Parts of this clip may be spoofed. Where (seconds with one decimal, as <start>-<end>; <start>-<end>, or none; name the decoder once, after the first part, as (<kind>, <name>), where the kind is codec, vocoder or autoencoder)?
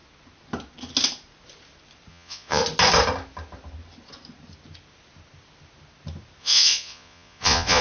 2.1-2.6 (vocoder, Vocos); 6.4-7.8